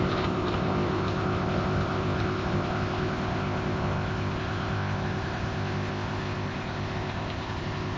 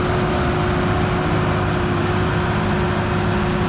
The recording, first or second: second